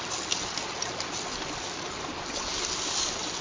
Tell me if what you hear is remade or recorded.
recorded